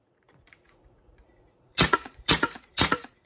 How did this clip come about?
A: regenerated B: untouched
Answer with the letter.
A